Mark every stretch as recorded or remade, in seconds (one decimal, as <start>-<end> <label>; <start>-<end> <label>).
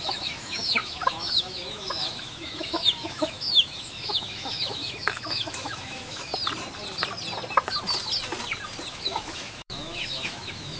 0.0-6.3 remade; 6.3-8.9 recorded; 8.9-10.8 remade